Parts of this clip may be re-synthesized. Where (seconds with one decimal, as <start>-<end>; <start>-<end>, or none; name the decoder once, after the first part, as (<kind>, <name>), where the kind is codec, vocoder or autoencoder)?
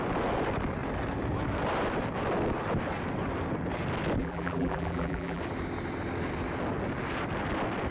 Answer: 4.2-5.4 (vocoder, BigVGAN v2)